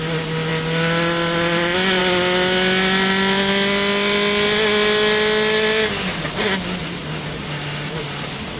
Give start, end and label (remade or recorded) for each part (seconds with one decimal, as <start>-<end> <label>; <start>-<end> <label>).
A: 0.0-8.6 recorded